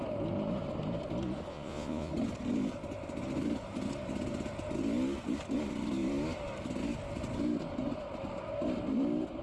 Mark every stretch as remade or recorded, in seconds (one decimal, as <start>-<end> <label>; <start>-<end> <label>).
0.0-1.5 recorded; 1.5-2.1 remade; 2.1-9.4 recorded